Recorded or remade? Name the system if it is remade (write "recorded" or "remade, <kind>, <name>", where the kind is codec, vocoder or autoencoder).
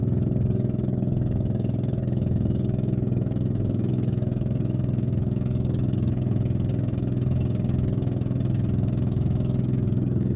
remade, codec, DAC